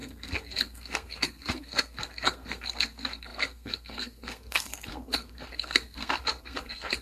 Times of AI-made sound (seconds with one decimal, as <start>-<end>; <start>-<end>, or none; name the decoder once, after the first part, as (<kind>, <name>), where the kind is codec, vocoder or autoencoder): 0.0-7.0 (codec, SNAC)